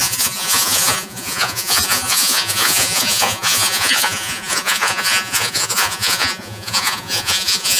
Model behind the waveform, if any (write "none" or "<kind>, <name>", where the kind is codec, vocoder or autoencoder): vocoder, Vocos